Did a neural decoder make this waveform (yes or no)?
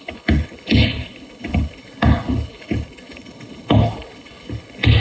yes